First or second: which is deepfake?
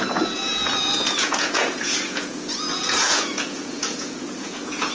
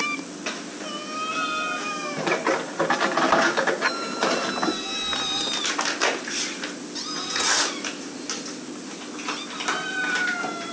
first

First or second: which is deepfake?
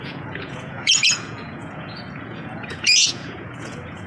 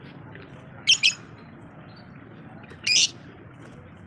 first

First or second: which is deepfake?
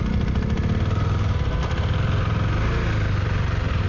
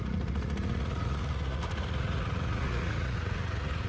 second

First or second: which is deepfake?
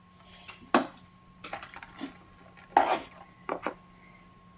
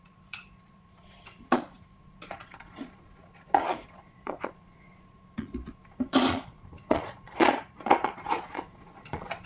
second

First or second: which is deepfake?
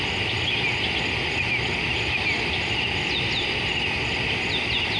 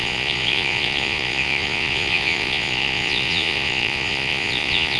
second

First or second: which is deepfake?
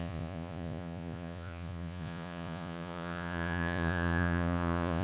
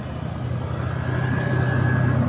first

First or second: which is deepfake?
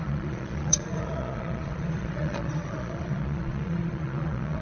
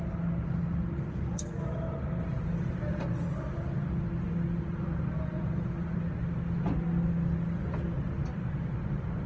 first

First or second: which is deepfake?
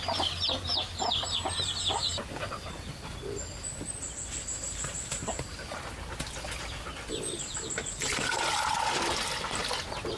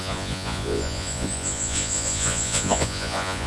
second